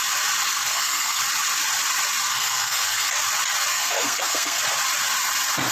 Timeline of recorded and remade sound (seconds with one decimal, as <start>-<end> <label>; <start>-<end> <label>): 0.0-0.5 recorded; 0.5-1.2 remade; 1.2-2.3 recorded; 2.3-3.1 remade; 3.1-3.7 recorded; 3.7-4.6 remade; 4.6-5.7 recorded